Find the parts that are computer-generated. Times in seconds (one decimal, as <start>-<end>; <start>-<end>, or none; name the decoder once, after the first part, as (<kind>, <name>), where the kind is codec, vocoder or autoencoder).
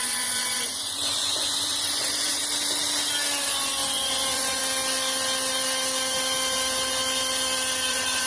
0.0-2.4 (vocoder, Vocos); 3.4-4.6; 7.9-8.3